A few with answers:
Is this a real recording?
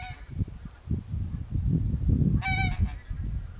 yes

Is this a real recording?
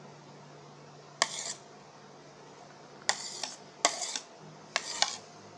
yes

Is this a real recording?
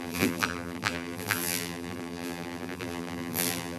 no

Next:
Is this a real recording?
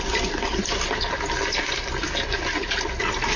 no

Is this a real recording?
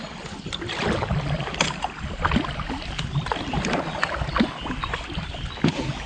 yes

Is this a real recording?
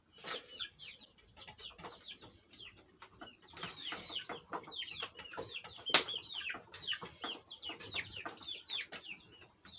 yes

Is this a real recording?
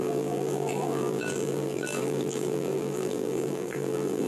no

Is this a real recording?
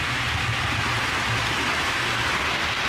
yes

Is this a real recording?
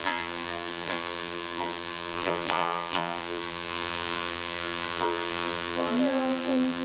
no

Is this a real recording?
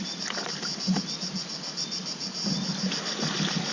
no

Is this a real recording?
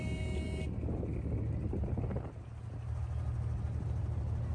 yes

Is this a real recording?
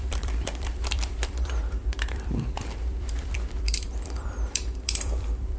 no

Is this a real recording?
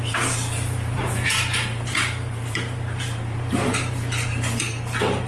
no